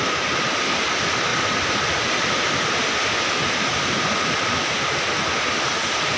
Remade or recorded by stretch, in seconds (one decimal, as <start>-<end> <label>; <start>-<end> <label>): 0.0-6.2 recorded